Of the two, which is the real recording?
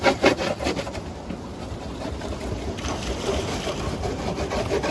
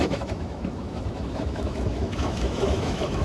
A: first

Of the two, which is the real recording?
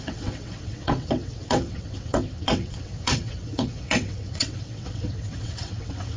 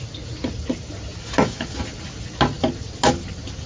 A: second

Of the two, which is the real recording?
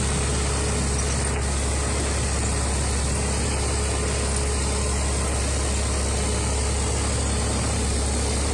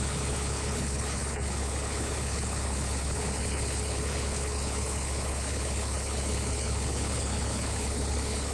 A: first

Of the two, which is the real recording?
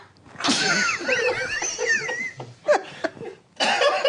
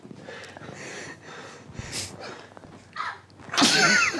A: second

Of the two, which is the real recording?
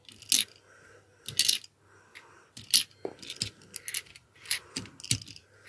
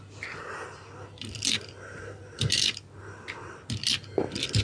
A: first